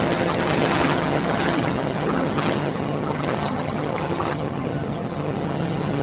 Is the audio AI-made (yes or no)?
yes